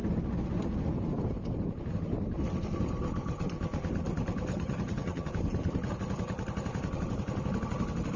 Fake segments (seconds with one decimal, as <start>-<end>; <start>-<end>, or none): 4.5-5.3